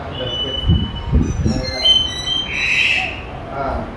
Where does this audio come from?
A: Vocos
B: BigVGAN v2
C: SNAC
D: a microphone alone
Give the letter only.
D